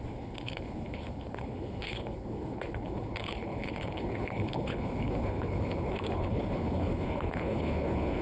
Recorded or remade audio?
remade